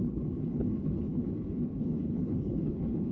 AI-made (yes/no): yes